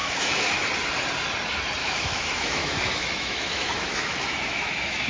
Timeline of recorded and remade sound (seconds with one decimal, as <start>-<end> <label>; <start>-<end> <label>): 0.0-0.6 remade; 0.6-1.8 recorded; 1.8-5.1 remade